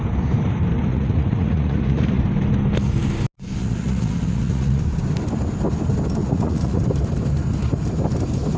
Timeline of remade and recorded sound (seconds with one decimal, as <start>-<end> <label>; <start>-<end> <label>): 0.0-0.9 recorded; 0.9-2.2 remade; 2.2-3.6 recorded; 3.6-4.8 remade; 4.8-6.2 recorded; 6.2-6.8 remade; 6.8-8.6 recorded